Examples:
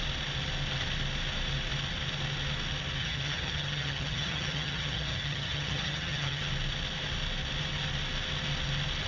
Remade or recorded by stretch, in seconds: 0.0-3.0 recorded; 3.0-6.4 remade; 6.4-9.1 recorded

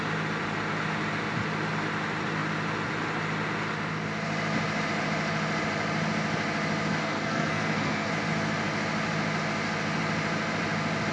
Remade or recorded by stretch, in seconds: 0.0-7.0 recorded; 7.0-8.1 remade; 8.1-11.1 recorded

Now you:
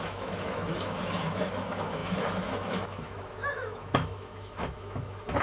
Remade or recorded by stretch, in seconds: 0.0-5.4 remade

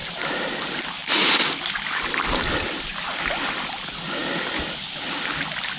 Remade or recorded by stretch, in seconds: 0.0-5.8 recorded

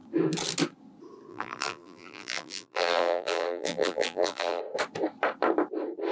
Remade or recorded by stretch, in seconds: 0.0-1.3 recorded; 1.3-4.6 remade; 4.6-6.1 recorded